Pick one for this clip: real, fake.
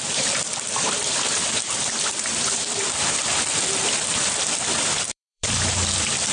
fake